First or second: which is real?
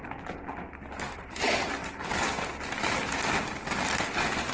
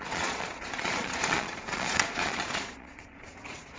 first